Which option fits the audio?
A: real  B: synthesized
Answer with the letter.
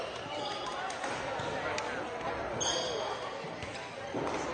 A